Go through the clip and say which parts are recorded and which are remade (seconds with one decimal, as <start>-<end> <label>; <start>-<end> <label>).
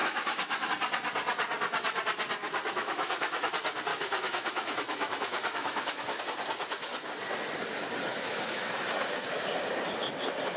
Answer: 0.0-0.7 remade; 0.7-2.4 recorded; 2.4-3.5 remade; 3.5-3.9 recorded; 3.9-6.2 remade; 6.2-8.1 recorded; 8.1-8.7 remade; 8.7-10.6 recorded